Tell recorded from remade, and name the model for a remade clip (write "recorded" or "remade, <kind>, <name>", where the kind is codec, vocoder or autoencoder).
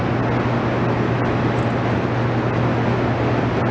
recorded